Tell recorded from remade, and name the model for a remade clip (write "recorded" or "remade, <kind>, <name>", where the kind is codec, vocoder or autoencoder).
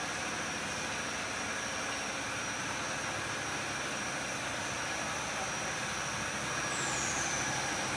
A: recorded